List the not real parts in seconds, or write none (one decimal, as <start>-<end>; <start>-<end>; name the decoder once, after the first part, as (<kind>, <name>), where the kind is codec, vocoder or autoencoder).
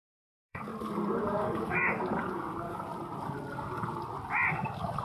0.0-0.7 (codec, DAC); 1.2-2.9; 4.5-5.0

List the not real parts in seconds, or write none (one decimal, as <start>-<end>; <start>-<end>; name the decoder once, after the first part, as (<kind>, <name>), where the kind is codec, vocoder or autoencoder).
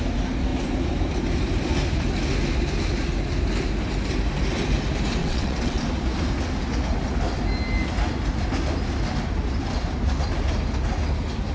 5.2-5.8 (vocoder, WaveNeXt)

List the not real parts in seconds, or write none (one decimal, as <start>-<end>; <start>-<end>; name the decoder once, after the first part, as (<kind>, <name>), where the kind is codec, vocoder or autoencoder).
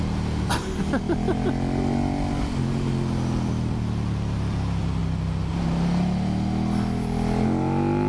none